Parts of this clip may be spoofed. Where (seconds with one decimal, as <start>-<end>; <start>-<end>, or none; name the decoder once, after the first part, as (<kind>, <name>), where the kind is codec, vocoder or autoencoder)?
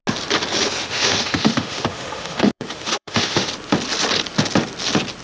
0.8-3.5 (autoencoder, DAC-VAE)